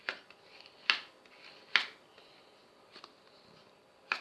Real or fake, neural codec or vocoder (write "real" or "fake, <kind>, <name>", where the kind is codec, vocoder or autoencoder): real